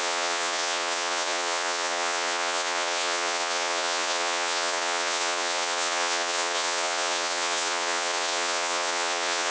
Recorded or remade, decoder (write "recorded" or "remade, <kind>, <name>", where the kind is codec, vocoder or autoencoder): remade, vocoder, Vocos